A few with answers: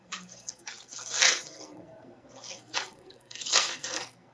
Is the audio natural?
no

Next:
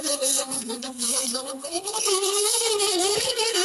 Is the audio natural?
no